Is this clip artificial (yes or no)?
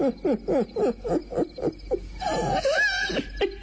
no